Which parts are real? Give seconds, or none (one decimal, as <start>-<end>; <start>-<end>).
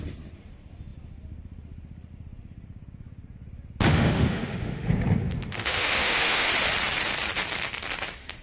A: 0.0-3.9; 4.9-5.5; 6.5-8.4